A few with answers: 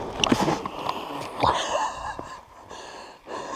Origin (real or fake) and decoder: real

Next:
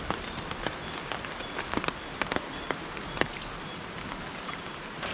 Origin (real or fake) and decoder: real